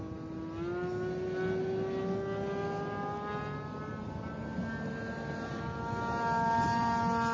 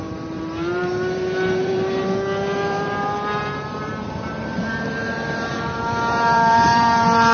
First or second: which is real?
first